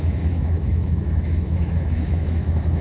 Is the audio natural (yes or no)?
no